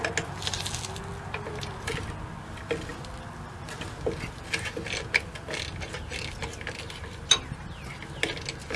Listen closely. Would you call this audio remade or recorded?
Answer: recorded